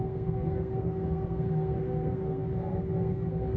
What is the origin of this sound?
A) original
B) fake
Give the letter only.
B